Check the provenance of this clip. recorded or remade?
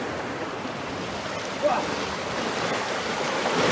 recorded